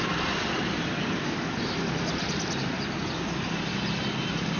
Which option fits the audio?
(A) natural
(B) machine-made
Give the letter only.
A